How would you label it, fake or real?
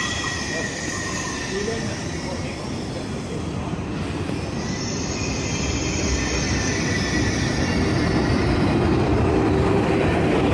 fake